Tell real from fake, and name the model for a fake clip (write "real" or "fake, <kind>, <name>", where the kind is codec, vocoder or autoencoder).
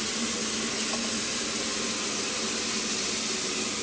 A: real